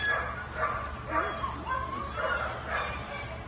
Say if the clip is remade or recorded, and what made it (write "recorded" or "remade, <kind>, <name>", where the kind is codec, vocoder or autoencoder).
recorded